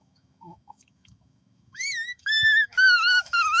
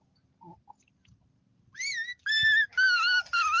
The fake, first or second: first